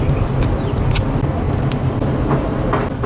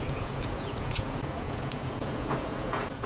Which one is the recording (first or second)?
first